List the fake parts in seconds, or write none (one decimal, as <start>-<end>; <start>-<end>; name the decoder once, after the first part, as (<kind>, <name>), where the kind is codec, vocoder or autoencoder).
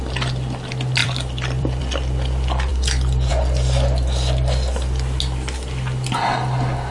1.0-1.8 (vocoder, BigVGAN v2)